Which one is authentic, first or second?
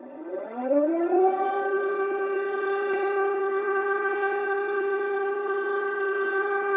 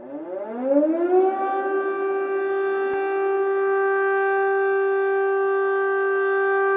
second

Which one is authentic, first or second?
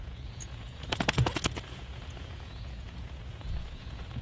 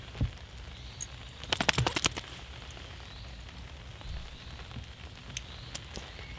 second